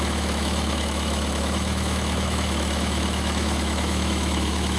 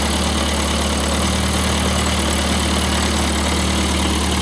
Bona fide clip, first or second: second